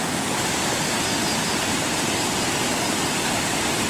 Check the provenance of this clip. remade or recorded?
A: recorded